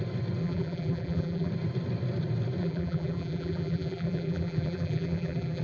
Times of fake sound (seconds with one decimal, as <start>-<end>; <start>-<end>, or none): 0.4-1.5; 2.6-5.6